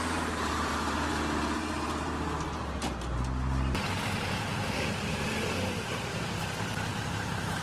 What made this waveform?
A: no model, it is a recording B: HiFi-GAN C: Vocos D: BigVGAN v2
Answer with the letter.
D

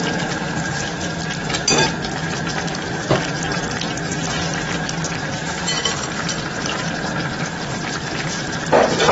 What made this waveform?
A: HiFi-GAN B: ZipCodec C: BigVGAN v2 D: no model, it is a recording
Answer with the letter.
D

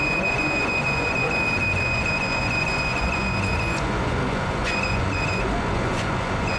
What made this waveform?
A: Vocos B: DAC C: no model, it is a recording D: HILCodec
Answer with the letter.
A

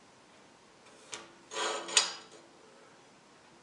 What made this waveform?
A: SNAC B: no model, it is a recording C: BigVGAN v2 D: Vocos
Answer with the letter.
B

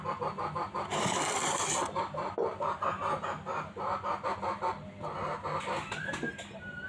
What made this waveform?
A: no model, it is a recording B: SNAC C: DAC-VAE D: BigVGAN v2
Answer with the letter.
A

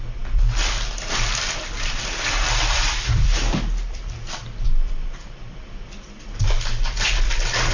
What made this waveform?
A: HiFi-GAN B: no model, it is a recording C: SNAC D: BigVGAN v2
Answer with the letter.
D